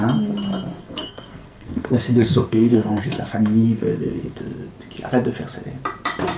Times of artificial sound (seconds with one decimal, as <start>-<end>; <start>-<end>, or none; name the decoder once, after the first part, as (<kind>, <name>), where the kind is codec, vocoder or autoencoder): 0.8-4.4 (codec, SNAC)